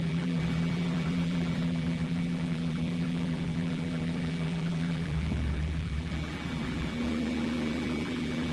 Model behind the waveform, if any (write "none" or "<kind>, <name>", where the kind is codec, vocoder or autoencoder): vocoder, BigVGAN v2